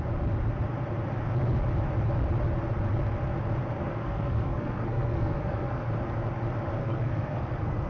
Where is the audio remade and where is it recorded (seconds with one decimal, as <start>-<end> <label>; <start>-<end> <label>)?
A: 0.0-3.8 recorded; 3.8-5.9 remade; 5.9-6.8 recorded; 6.8-7.9 remade